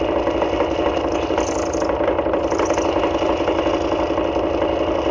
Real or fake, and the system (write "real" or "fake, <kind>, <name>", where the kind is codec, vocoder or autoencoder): real